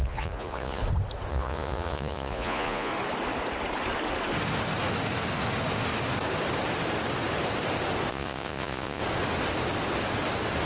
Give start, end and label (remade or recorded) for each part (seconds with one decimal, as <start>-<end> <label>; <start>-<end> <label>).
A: 0.0-0.8 remade; 0.8-1.3 recorded; 1.3-2.9 remade; 2.9-8.1 recorded; 8.1-9.0 remade; 9.0-10.7 recorded